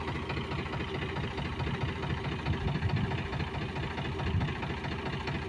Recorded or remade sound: recorded